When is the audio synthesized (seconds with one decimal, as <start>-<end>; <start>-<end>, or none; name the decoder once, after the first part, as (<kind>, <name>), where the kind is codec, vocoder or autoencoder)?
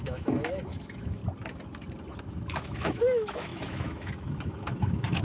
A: 0.0-1.2 (autoencoder, DAC-VAE); 2.2-5.2